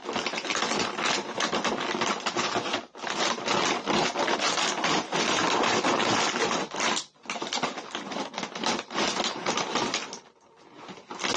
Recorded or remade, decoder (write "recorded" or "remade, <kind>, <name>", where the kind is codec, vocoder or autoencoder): recorded